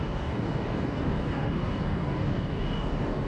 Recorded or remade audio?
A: remade